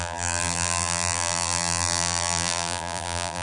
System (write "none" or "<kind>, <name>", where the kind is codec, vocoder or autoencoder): vocoder, BigVGAN v2